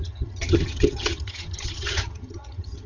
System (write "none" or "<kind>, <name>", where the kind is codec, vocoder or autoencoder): vocoder, HiFi-GAN